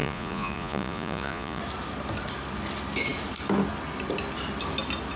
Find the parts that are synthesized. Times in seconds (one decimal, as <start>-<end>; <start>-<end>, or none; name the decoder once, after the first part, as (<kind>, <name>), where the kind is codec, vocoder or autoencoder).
0.0-1.6 (vocoder, Vocos)